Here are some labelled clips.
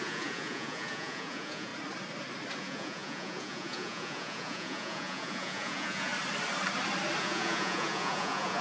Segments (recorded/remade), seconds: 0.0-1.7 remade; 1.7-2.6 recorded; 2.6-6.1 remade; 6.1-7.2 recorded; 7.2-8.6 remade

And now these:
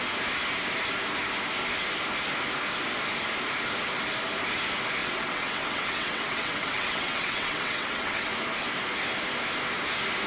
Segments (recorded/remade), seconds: 0.0-5.0 recorded; 5.0-8.3 remade; 8.3-10.3 recorded

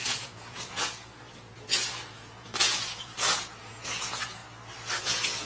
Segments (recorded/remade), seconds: 0.0-4.4 remade; 4.4-5.0 recorded; 5.0-5.5 remade